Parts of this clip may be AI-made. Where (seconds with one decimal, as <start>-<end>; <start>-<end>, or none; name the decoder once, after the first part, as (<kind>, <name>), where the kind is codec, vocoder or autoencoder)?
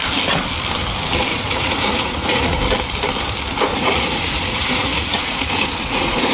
1.3-2.6 (vocoder, Vocos); 3.7-6.3